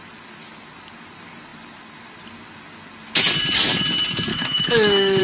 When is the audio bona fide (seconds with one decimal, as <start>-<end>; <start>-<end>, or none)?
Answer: 0.0-4.3